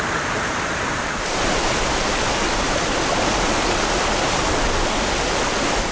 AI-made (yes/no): no